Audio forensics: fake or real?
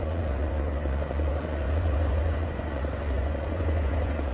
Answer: fake